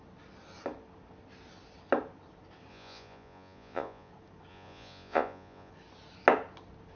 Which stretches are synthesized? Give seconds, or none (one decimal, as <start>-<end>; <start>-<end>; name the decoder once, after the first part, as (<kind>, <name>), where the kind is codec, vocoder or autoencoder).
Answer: 2.7-4.1 (vocoder, Vocos); 4.5-5.7